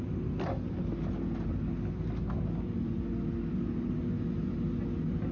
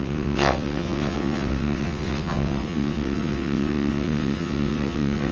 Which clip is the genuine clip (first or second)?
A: first